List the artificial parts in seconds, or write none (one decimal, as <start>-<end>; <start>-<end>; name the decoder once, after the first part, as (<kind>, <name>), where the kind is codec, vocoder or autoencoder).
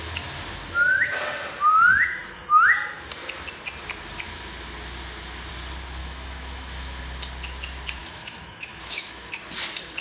6.0-7.0 (autoencoder, DAC-VAE); 8.0-9.3